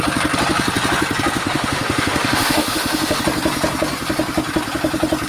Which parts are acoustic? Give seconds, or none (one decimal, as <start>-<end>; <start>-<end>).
0.0-1.4; 3.2-5.3